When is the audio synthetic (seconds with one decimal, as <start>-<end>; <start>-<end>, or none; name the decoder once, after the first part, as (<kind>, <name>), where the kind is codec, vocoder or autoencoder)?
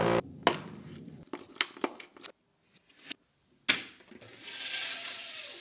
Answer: none